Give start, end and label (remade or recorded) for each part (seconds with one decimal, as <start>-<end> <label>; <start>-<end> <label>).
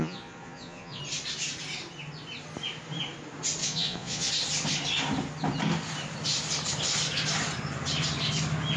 0.0-1.0 remade; 1.0-3.6 recorded; 3.6-4.3 remade; 4.3-8.8 recorded